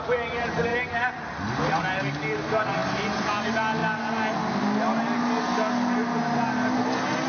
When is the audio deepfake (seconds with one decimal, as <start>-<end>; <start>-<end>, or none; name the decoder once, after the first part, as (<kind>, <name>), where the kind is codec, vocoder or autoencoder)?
none